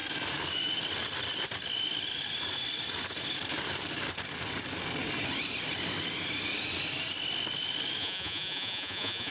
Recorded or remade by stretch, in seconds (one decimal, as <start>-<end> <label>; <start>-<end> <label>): 0.0-8.0 recorded; 8.0-9.3 remade

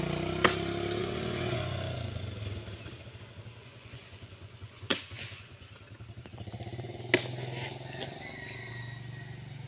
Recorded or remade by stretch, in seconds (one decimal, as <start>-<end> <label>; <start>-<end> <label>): 0.0-1.0 recorded; 1.0-2.2 remade; 2.2-3.6 recorded; 3.6-5.7 remade; 5.7-9.7 recorded

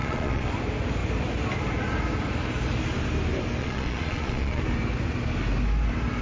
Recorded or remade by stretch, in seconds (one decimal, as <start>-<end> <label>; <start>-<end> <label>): 0.0-0.5 remade; 0.5-3.6 recorded; 3.6-4.6 remade; 4.6-6.2 recorded

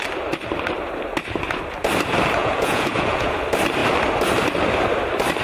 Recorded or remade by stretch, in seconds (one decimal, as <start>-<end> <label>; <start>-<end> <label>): 0.0-2.4 recorded; 2.4-3.4 remade; 3.4-5.4 recorded

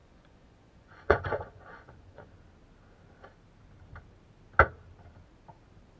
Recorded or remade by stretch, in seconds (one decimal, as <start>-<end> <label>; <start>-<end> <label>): 0.0-2.3 remade; 2.3-6.0 recorded